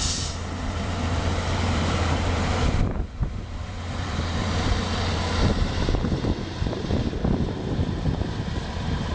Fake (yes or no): yes